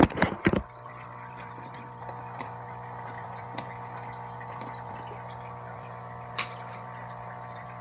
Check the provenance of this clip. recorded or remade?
remade